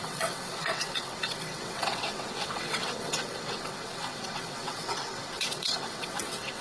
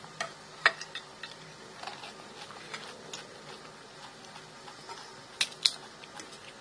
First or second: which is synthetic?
first